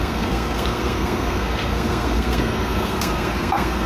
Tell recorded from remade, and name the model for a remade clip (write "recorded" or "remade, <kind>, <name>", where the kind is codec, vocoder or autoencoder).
remade, codec, SNAC